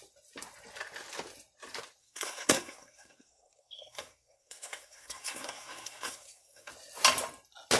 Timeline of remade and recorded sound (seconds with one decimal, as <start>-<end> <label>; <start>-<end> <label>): 0.0-2.0 recorded; 2.0-6.7 remade; 6.7-7.8 recorded